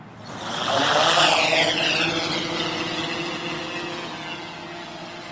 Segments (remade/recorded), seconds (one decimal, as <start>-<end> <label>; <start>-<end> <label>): 0.0-5.3 recorded